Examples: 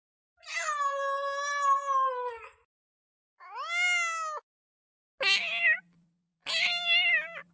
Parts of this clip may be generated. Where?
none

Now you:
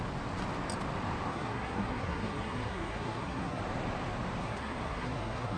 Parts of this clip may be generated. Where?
1.3-3.6 (codec, SNAC); 4.4-5.6

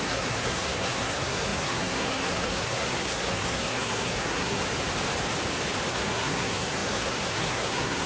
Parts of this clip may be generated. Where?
0.0-4.6 (codec, SNAC); 5.9-8.1

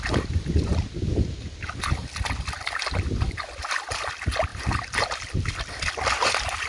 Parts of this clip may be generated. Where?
none

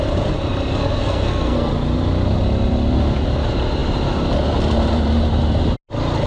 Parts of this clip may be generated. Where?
0.8-1.7 (codec, SNAC)

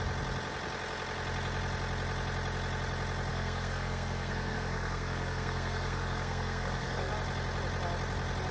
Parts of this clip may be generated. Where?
3.3-7.1 (codec, SNAC)